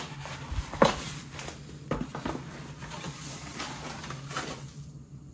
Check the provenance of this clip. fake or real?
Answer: real